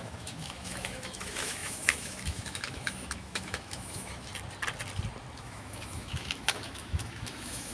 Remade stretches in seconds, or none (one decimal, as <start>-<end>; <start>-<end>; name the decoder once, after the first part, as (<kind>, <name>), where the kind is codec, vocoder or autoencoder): 0.0-4.3 (autoencoder, DAC-VAE); 5.4-7.7